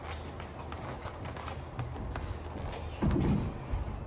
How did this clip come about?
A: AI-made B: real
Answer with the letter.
B